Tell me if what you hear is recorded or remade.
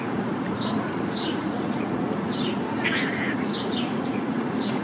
remade